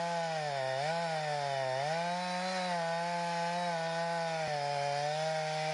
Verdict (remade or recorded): recorded